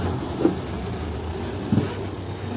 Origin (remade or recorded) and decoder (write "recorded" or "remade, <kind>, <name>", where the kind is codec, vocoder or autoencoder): recorded